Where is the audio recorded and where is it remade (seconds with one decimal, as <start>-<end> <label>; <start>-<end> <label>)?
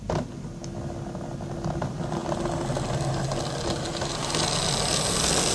0.0-5.5 recorded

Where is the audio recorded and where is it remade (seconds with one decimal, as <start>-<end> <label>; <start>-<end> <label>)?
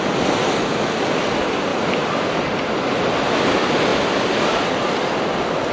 0.0-5.7 recorded